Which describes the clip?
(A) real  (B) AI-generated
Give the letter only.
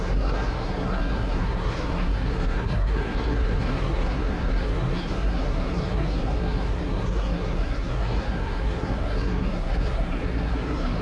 B